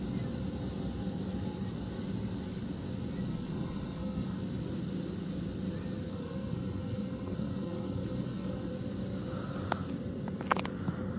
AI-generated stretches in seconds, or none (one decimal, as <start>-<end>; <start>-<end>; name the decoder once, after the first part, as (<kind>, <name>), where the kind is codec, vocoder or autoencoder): 3.3-4.4 (codec, SNAC); 6.1-8.7